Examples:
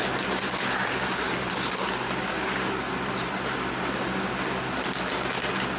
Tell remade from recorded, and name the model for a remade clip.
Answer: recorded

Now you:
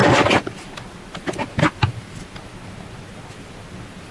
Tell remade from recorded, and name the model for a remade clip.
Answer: recorded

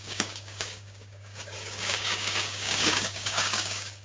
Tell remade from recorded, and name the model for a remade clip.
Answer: remade, codec, DAC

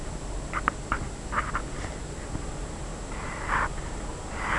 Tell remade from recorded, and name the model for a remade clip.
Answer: recorded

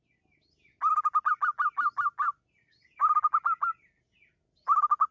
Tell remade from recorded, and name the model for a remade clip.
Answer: recorded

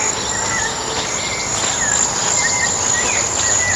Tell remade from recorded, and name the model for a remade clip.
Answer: recorded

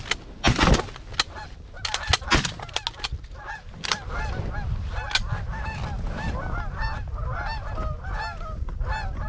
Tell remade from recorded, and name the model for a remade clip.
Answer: recorded